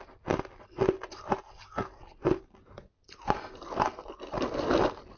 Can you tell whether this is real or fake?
real